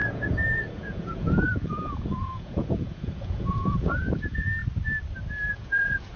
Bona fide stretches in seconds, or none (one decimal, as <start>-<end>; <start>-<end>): 4.6-5.5